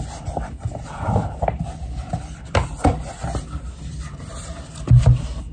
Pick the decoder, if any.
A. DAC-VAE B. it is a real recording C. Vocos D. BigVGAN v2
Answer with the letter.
B